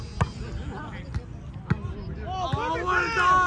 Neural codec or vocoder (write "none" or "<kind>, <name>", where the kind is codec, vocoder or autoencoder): none